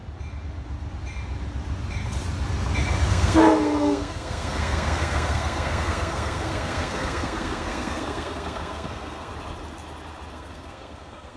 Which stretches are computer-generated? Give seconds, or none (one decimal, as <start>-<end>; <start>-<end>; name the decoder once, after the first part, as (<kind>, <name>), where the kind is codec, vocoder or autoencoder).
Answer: 3.1-9.3 (codec, SNAC); 10.3-11.4